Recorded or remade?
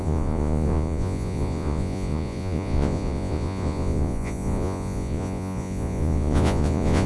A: remade